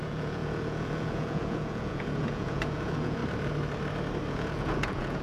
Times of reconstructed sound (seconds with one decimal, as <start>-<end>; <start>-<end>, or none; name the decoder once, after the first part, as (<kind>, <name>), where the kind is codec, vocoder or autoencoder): 0.0-3.2 (vocoder, Vocos); 4.3-5.2